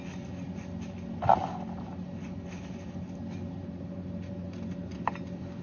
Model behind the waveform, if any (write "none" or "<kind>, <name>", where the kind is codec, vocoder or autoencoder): none